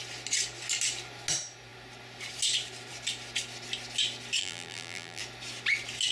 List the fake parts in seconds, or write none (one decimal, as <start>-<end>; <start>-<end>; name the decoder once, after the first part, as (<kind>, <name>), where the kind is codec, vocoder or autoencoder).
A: 4.4-5.2 (vocoder, BigVGAN v2)